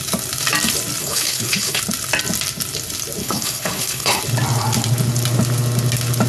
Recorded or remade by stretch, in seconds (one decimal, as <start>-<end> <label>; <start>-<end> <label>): 0.0-1.0 recorded; 1.0-1.8 remade; 1.8-3.2 recorded; 3.2-4.2 remade; 4.2-6.3 recorded

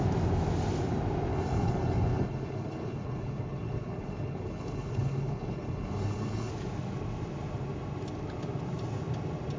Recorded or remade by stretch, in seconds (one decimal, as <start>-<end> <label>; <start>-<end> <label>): 0.0-1.3 recorded; 1.3-6.5 remade; 6.5-9.6 recorded

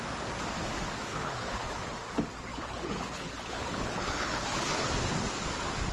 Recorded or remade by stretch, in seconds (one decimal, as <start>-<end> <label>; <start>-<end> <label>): 0.0-1.1 recorded; 1.1-1.9 remade; 1.9-2.5 recorded; 2.5-4.9 remade; 4.9-5.9 recorded

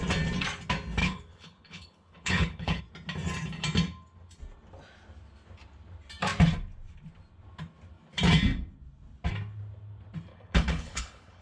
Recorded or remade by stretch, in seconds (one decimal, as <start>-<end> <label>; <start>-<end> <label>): 0.0-1.0 recorded; 1.0-2.8 remade; 2.8-10.3 recorded; 10.3-11.4 remade